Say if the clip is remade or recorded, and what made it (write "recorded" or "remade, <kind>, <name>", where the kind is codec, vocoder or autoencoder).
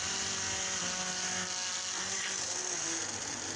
recorded